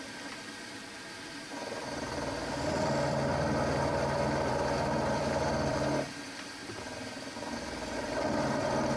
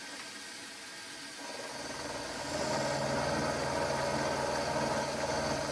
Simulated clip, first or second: first